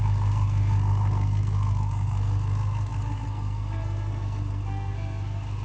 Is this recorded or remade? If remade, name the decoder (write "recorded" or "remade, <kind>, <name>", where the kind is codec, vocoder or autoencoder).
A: remade, codec, SNAC